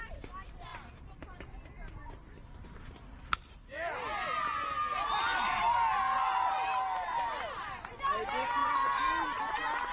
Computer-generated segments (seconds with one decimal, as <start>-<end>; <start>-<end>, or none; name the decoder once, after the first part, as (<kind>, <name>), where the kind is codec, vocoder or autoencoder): 0.7-1.4 (vocoder, BigVGAN v2); 8.6-9.4